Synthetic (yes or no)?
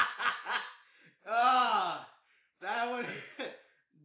no